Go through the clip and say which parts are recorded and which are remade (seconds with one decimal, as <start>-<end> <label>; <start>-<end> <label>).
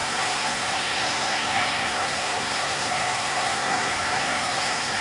0.0-5.0 remade